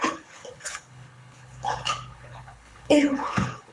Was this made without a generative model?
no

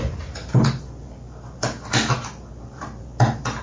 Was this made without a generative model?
yes